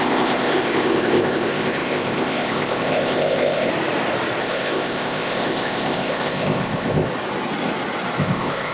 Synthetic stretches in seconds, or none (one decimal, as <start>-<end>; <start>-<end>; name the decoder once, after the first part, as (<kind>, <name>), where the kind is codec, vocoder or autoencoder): 0.0-3.7 (codec, ZipCodec); 4.4-7.1; 8.2-8.7